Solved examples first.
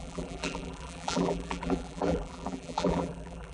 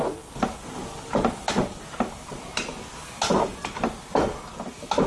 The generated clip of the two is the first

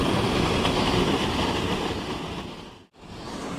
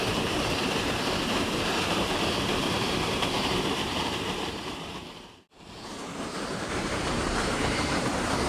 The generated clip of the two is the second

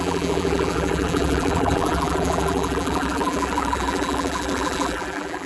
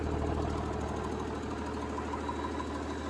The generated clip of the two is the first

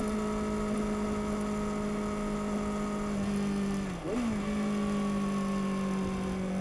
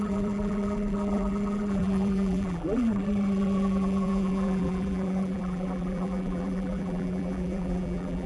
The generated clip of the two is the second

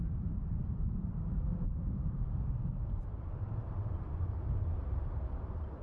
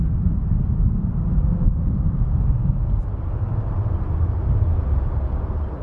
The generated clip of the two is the first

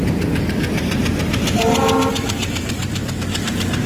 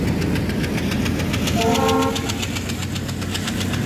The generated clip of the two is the first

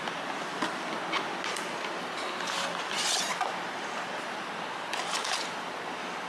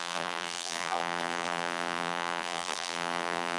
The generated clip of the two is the second